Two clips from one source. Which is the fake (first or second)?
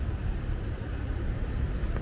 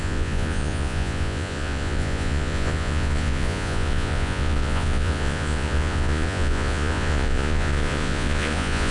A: second